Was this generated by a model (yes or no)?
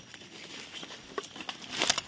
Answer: no